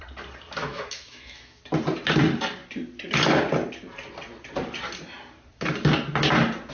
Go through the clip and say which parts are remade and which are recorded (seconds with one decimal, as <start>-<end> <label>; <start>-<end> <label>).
0.0-0.6 recorded; 0.6-1.6 remade; 1.6-6.7 recorded